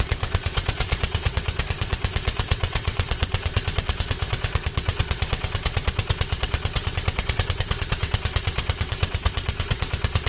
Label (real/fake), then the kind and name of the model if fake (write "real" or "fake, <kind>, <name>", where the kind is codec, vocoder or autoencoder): fake, vocoder, WaveNeXt